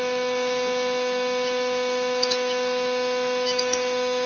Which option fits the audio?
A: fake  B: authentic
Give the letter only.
A